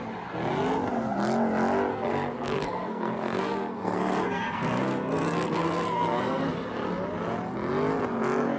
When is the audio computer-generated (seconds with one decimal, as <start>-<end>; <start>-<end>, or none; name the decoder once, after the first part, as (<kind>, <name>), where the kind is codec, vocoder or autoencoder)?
1.9-6.4 (codec, SNAC)